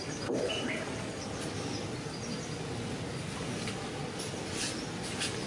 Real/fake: real